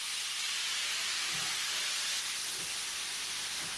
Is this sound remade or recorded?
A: recorded